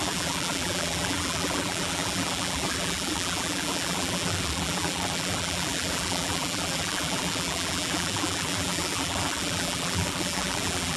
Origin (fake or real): fake